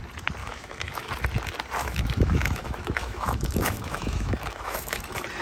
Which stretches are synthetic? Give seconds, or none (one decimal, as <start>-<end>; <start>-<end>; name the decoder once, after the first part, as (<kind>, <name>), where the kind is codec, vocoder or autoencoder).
0.4-1.1 (autoencoder, DAC-VAE); 1.8-5.0